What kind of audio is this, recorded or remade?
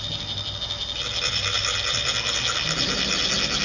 recorded